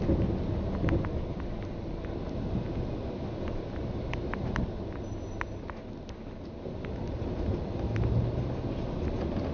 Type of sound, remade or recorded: recorded